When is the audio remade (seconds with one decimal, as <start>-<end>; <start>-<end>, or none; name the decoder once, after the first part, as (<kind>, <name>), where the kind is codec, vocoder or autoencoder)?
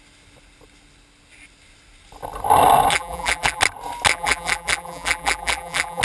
2.9-3.6 (vocoder, BigVGAN v2); 4.1-6.0